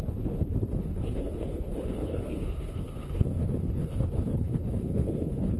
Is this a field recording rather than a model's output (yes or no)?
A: no